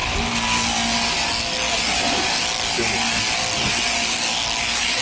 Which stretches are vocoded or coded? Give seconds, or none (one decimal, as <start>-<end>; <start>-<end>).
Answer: none